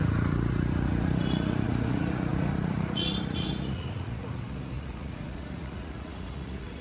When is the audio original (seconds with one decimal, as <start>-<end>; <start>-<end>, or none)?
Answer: none